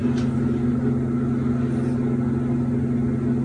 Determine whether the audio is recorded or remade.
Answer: recorded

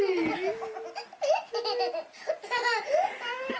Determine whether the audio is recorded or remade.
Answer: recorded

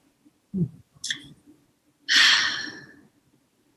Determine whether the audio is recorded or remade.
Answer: recorded